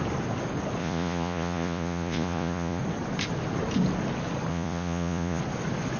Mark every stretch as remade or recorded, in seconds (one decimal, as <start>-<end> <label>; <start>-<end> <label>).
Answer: 0.0-0.8 recorded; 0.8-2.8 remade; 2.8-4.5 recorded; 4.5-5.4 remade; 5.4-6.0 recorded